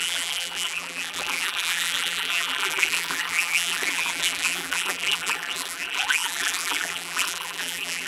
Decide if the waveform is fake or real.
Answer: fake